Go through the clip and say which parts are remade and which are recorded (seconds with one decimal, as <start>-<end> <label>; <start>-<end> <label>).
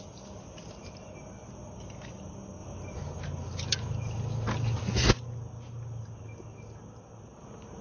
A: 0.0-7.8 recorded